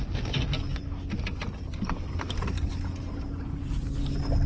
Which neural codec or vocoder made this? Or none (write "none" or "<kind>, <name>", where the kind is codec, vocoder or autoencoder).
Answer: none